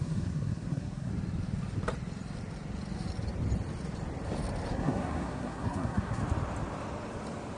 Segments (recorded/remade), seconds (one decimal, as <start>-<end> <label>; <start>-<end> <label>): 0.0-1.1 remade; 1.1-4.7 recorded; 4.7-6.2 remade; 6.2-7.6 recorded